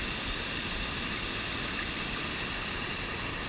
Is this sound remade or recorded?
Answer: remade